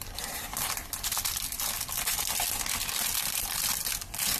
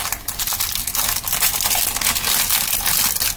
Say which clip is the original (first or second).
second